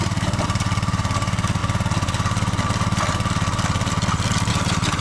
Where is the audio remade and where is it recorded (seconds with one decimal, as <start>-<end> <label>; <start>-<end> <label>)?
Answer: 0.0-1.6 remade; 1.6-4.5 recorded; 4.5-5.0 remade